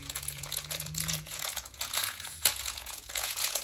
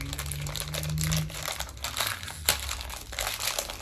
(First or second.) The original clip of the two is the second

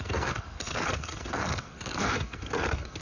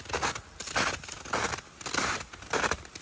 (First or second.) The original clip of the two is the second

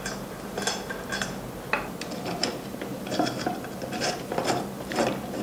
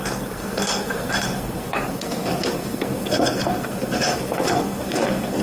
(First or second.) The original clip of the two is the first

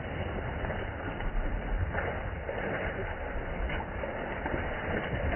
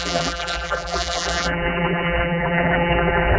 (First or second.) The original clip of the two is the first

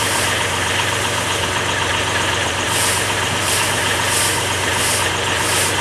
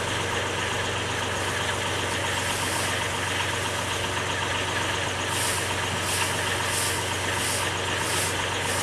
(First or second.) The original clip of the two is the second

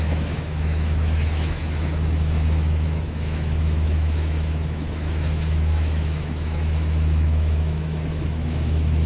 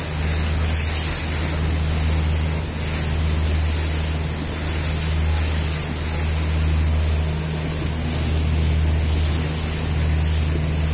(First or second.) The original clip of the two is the second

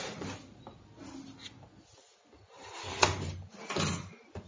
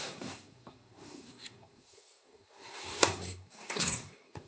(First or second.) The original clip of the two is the first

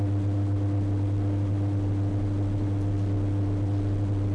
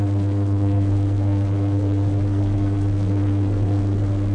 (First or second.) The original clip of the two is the first